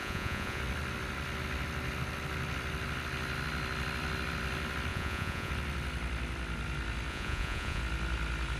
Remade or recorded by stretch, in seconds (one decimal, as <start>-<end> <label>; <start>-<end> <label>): 0.0-0.6 remade; 0.6-4.9 recorded; 4.9-5.5 remade; 5.5-7.1 recorded; 7.1-7.8 remade; 7.8-8.6 recorded